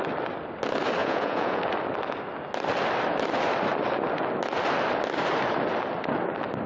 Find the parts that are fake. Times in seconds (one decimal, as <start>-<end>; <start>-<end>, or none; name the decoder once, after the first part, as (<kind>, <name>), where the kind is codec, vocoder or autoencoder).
1.0-1.6 (vocoder, Vocos)